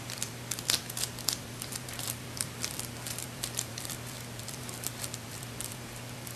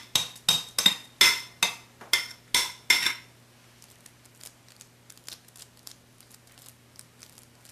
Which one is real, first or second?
second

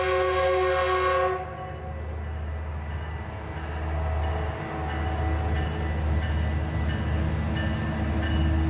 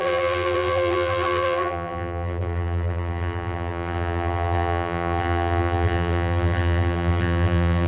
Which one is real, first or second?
first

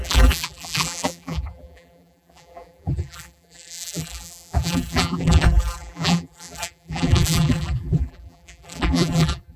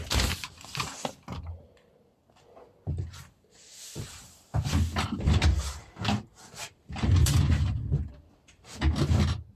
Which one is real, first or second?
second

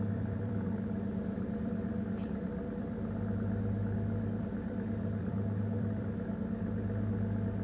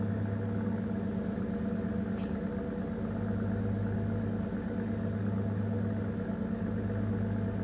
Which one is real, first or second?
second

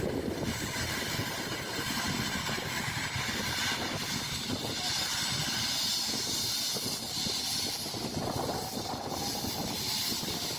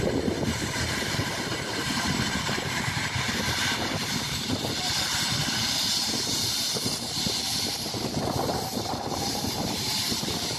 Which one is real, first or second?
first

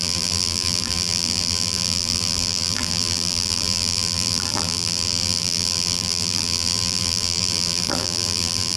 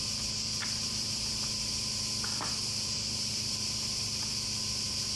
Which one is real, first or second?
second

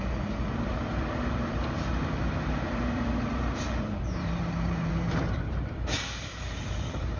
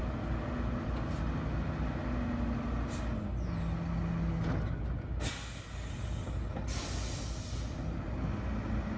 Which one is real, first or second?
second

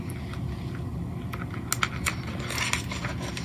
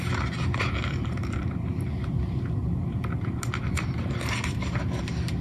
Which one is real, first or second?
first